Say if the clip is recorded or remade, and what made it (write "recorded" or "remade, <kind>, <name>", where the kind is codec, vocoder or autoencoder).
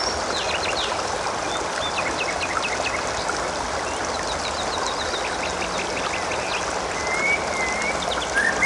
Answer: recorded